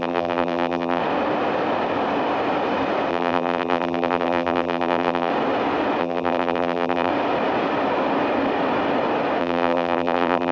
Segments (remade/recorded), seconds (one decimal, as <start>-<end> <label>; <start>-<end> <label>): 0.0-1.0 remade; 1.0-3.1 recorded; 3.1-5.3 remade; 5.3-6.0 recorded; 6.0-7.1 remade; 7.1-9.4 recorded; 9.4-10.5 remade